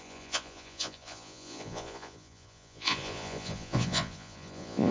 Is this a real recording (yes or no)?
no